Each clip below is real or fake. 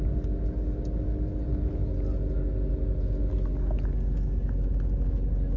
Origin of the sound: real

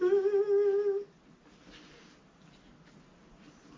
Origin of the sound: real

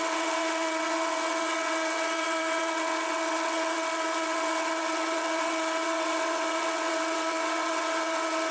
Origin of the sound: fake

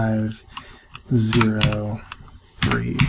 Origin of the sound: real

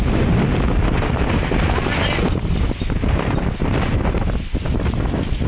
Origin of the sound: fake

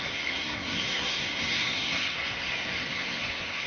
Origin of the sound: fake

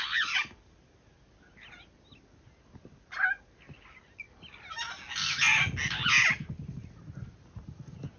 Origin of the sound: real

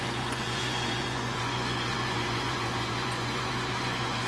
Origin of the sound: fake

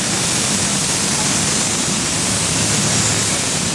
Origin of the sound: real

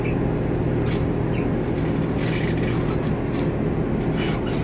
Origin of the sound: real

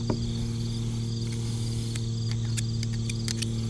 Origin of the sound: real